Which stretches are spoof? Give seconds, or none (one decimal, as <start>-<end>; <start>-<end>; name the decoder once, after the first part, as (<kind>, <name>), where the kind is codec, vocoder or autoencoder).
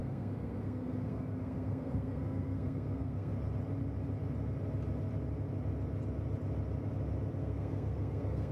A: 0.0-3.3 (codec, SNAC); 7.4-8.5